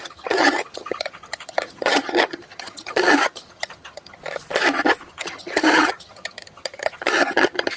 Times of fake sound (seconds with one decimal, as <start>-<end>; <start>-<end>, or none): 0.0-4.2; 5.1-7.8